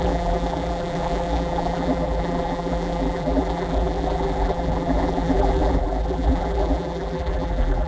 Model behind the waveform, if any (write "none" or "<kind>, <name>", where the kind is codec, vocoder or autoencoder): vocoder, BigVGAN v2